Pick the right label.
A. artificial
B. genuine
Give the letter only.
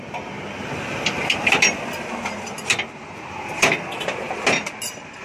B